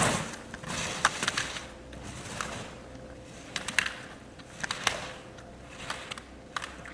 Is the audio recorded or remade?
recorded